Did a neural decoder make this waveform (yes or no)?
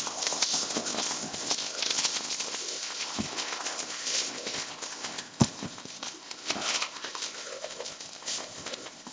yes